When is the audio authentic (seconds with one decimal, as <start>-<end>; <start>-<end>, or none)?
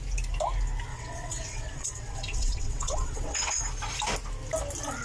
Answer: 0.0-0.9; 3.6-5.0